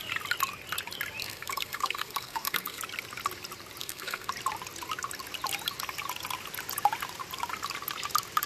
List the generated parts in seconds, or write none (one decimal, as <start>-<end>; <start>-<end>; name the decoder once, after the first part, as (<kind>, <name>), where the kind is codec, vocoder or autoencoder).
1.2-2.8 (codec, SNAC); 3.8-4.3